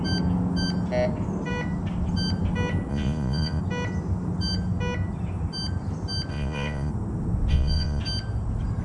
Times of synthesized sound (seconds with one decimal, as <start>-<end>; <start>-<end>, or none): 2.9-3.6; 6.3-6.9; 7.5-8.0